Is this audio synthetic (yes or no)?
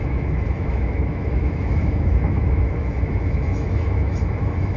yes